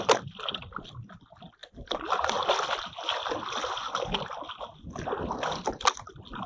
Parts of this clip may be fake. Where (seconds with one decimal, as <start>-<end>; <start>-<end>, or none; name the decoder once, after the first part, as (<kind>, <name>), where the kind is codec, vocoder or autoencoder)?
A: none